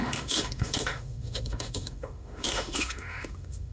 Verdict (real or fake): fake